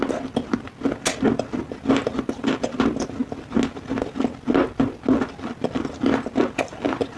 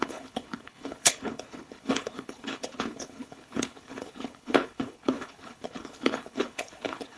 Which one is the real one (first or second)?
first